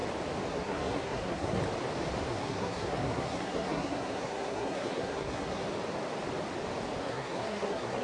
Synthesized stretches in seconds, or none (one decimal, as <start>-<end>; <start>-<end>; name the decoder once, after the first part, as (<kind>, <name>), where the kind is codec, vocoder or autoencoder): 0.5-1.6 (codec, SNAC); 2.3-5.6; 7.0-8.0